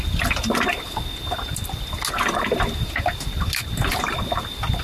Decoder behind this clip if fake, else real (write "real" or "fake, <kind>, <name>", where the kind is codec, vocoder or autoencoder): real